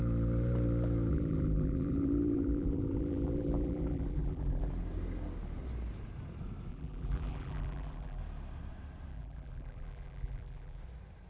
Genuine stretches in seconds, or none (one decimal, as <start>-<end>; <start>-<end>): 0.0-1.1; 4.7-6.7; 8.2-9.1; 10.8-11.3